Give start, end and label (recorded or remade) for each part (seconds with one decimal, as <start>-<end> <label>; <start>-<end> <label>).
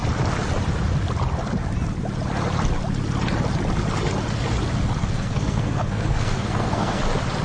0.0-5.0 recorded; 5.0-7.0 remade; 7.0-7.4 recorded